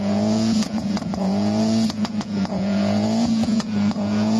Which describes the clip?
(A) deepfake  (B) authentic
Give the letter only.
A